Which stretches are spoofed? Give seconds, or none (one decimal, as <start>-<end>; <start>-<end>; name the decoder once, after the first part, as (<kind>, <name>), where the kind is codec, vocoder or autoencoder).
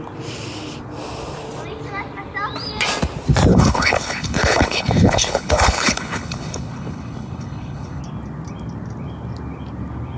3.5-8.0 (codec, HILCodec)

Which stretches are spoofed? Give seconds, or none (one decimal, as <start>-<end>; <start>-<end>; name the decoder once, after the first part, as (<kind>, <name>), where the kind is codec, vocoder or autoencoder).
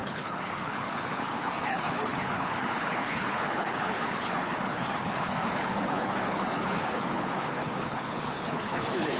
0.0-9.2 (codec, HILCodec)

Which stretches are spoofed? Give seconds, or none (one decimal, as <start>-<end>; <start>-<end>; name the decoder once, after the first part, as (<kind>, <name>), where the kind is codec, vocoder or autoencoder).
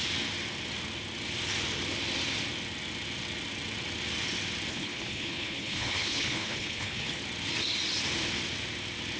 4.7-7.2 (codec, HILCodec)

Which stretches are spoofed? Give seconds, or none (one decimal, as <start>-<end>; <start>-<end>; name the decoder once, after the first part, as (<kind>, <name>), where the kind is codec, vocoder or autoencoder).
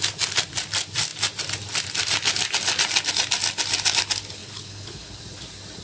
4.4-5.2 (codec, HILCodec)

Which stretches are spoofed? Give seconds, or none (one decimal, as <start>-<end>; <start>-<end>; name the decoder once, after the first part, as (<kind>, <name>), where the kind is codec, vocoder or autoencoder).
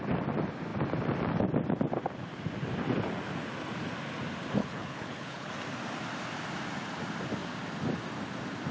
4.6-5.5 (codec, HILCodec)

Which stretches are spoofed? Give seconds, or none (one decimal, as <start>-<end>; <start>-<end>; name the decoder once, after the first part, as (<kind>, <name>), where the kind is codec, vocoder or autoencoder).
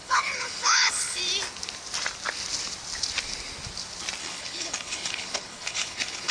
0.0-1.2 (codec, HILCodec); 4.2-6.3